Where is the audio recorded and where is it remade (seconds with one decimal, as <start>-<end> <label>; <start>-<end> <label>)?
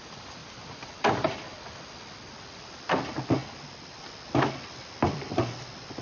0.0-6.0 recorded